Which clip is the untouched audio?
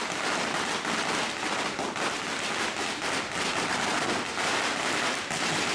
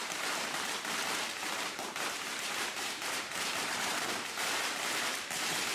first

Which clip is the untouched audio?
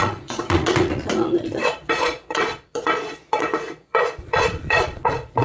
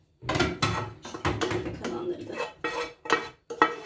second